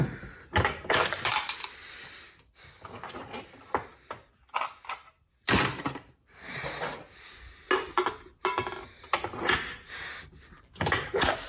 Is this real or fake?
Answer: real